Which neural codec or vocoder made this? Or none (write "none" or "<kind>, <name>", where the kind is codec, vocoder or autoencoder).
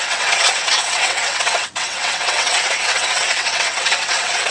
vocoder, WaveNeXt